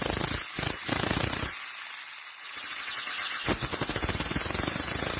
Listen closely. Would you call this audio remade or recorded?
recorded